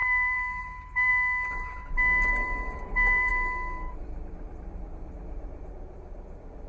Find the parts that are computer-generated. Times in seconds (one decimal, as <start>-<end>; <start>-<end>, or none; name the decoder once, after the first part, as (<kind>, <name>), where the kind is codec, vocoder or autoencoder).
0.0-1.1 (vocoder, BigVGAN v2); 2.3-3.3; 3.9-6.7